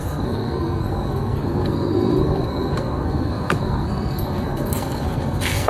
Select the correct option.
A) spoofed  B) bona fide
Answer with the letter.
A